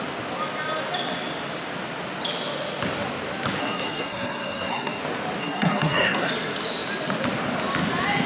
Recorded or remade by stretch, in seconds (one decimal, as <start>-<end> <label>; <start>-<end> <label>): 0.0-3.6 recorded; 3.6-5.0 remade; 5.0-5.4 recorded; 5.4-6.3 remade; 6.3-8.3 recorded